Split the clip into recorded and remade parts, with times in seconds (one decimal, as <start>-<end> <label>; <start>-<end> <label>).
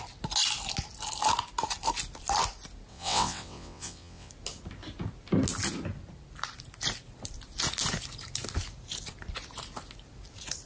0.0-2.9 recorded; 2.9-4.3 remade; 4.3-10.7 recorded